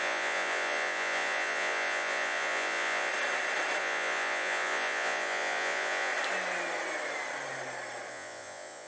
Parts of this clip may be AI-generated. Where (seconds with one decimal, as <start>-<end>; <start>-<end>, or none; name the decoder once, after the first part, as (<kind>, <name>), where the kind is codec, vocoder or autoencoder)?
0.0-3.1 (vocoder, Vocos); 3.8-6.1; 8.1-8.9